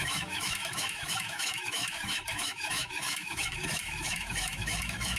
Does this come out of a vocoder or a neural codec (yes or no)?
yes